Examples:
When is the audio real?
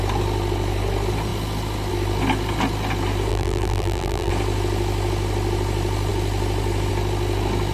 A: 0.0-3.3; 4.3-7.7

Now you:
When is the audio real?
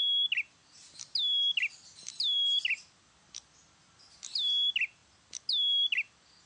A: 0.0-6.5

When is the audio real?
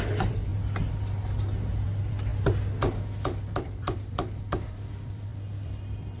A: 0.5-1.7; 2.3-3.5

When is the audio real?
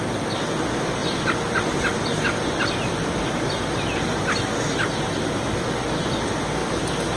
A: 0.0-6.6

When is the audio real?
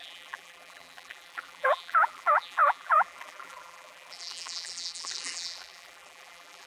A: none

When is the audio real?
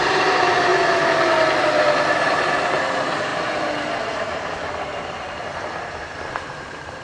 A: 0.7-1.6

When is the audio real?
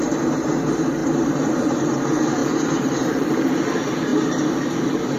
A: 0.0-1.0; 1.7-2.4; 3.5-5.2